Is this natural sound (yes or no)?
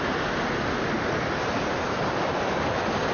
yes